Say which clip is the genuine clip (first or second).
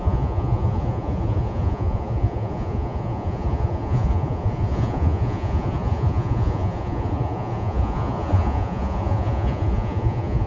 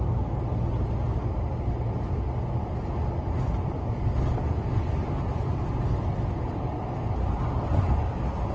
second